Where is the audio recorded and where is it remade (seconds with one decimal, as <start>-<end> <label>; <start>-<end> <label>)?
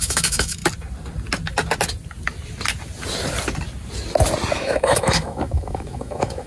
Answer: 0.0-0.6 remade; 0.6-4.5 recorded; 4.5-6.5 remade